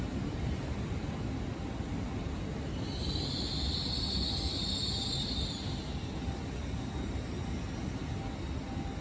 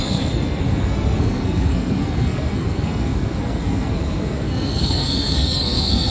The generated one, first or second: second